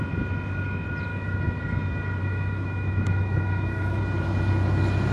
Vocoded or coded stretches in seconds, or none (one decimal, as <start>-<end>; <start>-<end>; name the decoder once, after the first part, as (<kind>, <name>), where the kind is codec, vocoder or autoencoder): 1.1-1.6 (autoencoder, DAC-VAE); 2.2-4.0